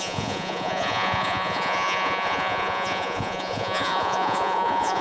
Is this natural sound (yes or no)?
no